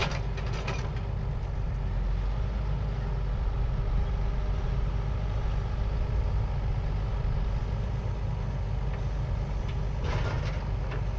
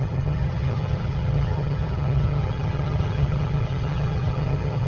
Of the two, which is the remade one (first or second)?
second